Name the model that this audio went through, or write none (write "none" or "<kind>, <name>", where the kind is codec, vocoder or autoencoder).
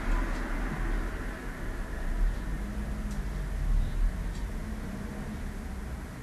none